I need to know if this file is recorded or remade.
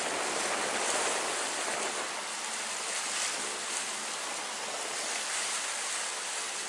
recorded